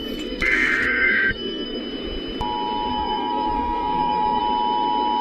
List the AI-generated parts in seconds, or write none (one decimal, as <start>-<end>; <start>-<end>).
0.0-1.8; 2.9-4.4